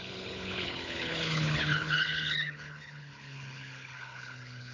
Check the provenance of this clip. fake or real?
fake